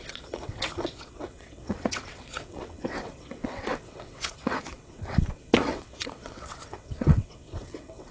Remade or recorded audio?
remade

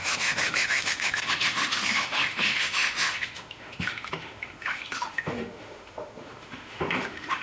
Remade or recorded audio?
remade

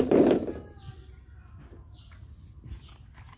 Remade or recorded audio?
recorded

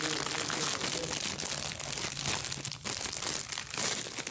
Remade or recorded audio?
recorded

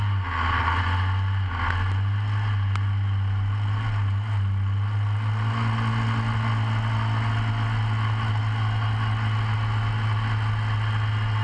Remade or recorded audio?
recorded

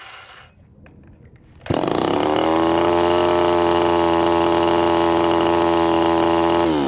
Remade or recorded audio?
recorded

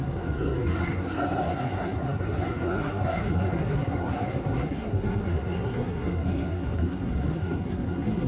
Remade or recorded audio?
remade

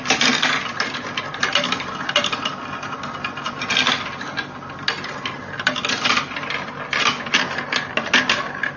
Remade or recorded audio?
recorded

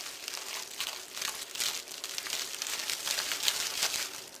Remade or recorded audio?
recorded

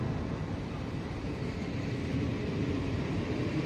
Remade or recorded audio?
remade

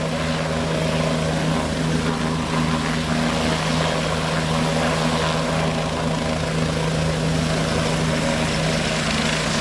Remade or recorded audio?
recorded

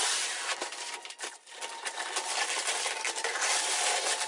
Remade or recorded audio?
recorded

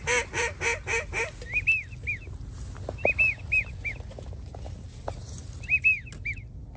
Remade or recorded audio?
recorded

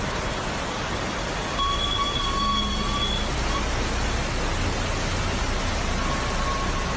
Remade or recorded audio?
recorded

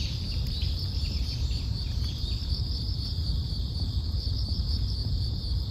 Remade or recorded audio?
remade